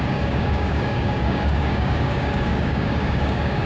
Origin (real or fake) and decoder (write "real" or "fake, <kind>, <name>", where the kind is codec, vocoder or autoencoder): fake, codec, DAC